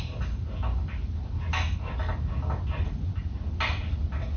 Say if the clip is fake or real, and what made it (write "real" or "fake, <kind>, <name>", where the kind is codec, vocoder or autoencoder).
real